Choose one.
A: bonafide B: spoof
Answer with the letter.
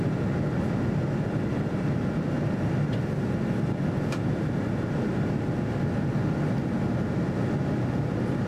A